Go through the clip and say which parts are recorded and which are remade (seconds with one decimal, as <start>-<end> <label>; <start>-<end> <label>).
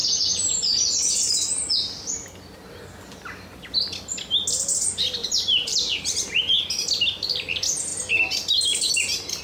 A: 0.0-1.3 remade; 1.3-5.2 recorded; 5.2-6.5 remade; 6.5-9.4 recorded